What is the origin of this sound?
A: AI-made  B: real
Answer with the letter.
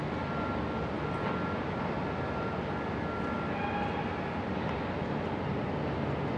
B